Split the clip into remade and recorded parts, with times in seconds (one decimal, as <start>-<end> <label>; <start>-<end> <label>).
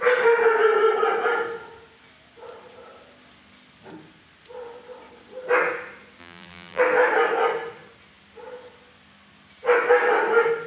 0.0-6.2 recorded; 6.2-6.8 remade; 6.8-10.7 recorded